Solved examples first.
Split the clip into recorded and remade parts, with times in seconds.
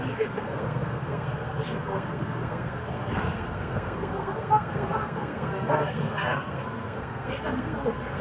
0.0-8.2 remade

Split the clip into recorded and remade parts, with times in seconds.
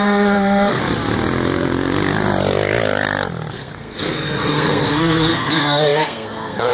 0.0-0.8 remade; 0.8-3.5 recorded; 3.5-6.7 remade